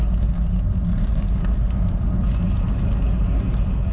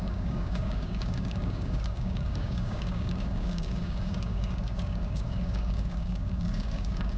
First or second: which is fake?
second